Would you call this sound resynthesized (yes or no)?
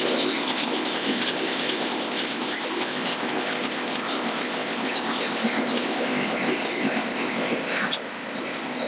yes